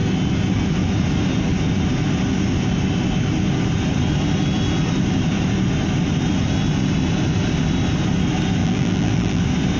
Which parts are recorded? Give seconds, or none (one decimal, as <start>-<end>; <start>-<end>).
0.0-8.6; 9.4-9.8